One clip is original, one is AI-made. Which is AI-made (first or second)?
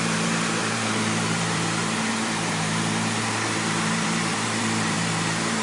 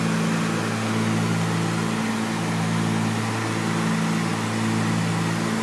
first